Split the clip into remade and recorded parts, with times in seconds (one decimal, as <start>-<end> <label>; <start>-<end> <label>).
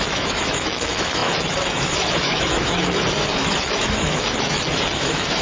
0.0-5.4 remade